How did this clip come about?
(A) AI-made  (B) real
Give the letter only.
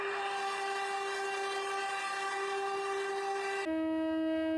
B